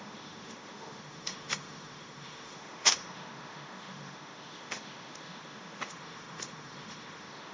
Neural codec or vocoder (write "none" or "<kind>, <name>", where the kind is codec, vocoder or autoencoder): autoencoder, DAC-VAE